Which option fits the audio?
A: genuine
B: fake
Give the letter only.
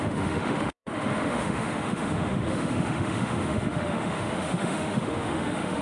B